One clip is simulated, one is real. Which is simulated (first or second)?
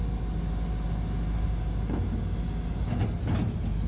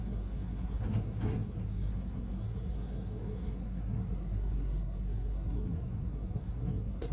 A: second